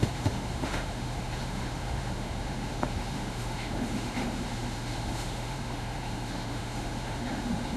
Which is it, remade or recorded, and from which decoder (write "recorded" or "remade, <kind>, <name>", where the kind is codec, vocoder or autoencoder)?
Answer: remade, autoencoder, DAC-VAE